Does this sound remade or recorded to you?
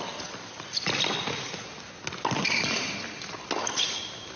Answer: recorded